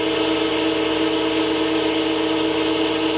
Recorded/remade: recorded